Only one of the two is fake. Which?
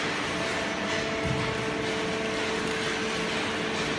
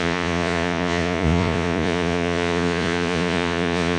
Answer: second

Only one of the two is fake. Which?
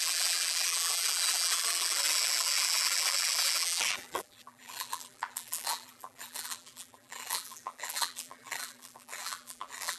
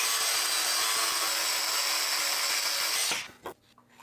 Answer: first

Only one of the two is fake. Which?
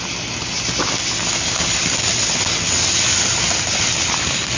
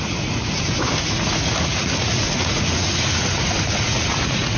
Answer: second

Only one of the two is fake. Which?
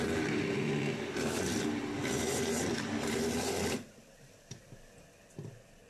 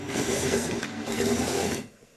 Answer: second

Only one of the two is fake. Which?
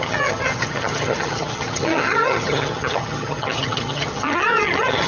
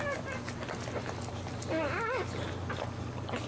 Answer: first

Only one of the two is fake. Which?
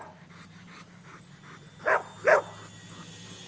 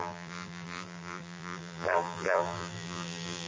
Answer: second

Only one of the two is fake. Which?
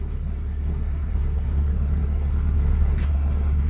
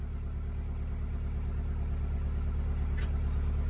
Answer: first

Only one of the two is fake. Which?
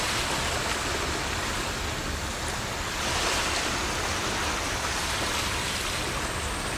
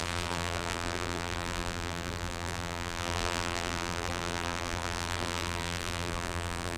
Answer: second